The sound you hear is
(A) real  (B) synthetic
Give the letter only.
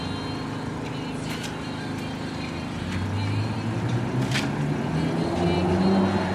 A